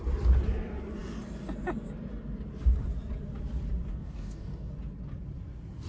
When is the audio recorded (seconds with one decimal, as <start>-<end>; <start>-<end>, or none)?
0.0-3.9; 4.7-5.9